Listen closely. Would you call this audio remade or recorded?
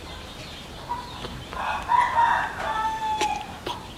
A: recorded